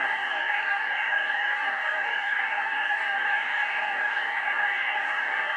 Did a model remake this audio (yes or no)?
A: yes